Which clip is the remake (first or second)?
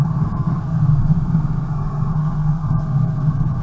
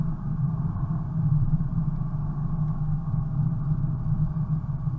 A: first